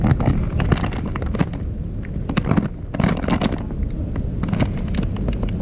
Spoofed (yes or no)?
no